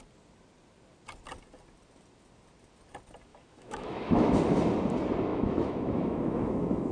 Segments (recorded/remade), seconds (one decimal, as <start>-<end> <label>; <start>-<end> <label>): 0.0-3.3 recorded; 3.3-4.4 remade; 4.4-5.3 recorded; 5.3-6.9 remade